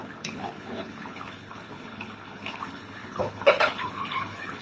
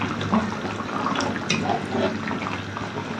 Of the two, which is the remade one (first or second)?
first